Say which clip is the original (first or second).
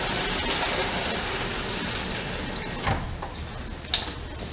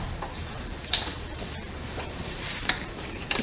first